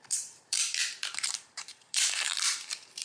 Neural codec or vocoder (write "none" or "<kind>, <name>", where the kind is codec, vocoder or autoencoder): vocoder, BigVGAN v2